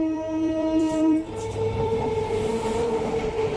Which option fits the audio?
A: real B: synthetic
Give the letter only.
B